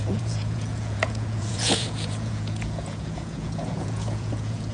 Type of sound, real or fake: fake